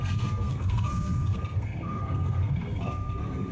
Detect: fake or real fake